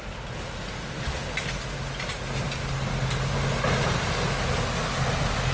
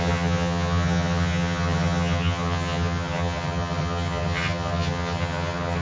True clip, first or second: first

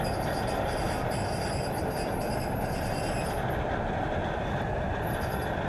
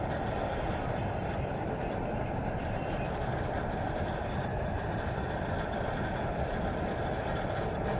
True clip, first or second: first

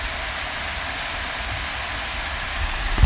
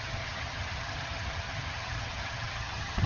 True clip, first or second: first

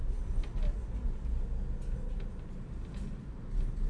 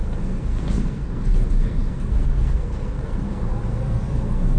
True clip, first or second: first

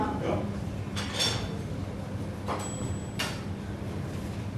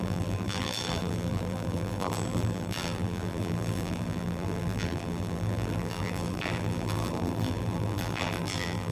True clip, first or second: first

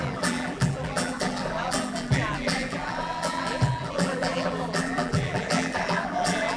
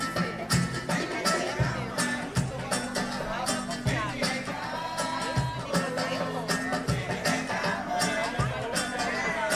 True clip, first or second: second